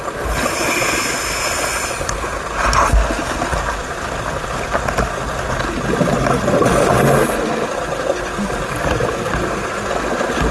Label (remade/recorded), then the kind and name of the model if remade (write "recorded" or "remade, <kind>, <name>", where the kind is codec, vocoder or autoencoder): recorded